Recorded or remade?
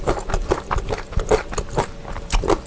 recorded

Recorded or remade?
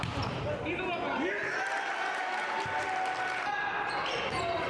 recorded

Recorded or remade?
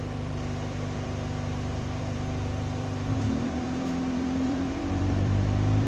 remade